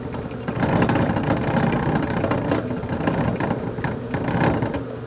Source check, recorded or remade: recorded